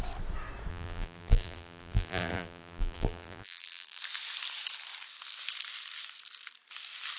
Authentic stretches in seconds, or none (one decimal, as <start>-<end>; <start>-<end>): 0.0-0.7; 4.0-7.2